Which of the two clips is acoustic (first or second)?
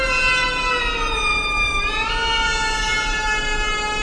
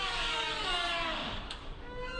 first